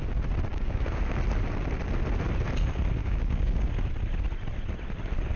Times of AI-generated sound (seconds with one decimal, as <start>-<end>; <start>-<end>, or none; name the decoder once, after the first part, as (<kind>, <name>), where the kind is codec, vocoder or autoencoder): 0.5-1.0 (codec, DAC); 3.0-3.7